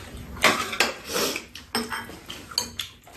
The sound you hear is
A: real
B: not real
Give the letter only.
A